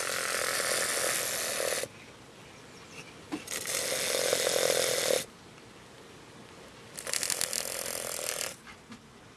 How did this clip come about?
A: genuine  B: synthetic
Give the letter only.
A